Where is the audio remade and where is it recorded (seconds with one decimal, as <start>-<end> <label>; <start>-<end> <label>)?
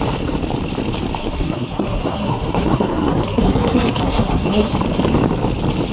0.0-1.2 recorded; 1.2-4.7 remade; 4.7-5.9 recorded